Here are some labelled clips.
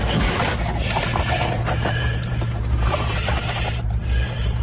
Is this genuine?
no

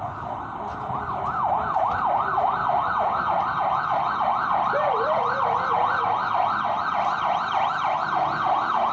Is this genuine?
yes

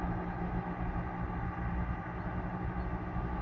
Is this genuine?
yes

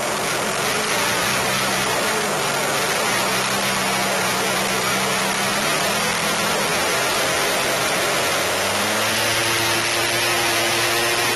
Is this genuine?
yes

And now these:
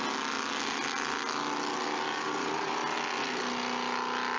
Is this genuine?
yes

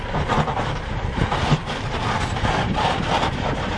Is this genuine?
no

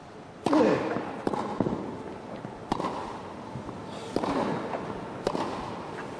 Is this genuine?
yes